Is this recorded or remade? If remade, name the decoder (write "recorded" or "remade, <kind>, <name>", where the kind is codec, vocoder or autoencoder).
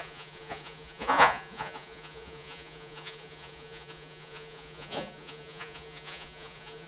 remade, vocoder, Vocos